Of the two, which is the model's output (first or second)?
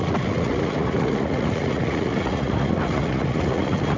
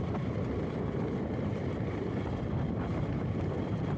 first